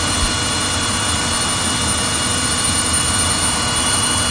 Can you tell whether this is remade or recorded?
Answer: remade